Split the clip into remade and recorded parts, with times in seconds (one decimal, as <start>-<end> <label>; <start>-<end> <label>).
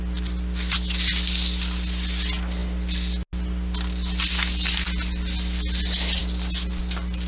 0.0-7.3 recorded